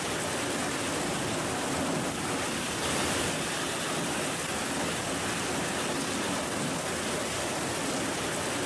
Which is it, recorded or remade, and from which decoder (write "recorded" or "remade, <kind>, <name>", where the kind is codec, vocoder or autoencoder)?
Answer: recorded